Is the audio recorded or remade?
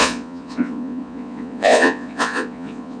remade